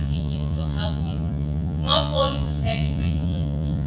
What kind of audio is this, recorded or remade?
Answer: remade